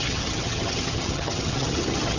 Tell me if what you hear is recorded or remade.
remade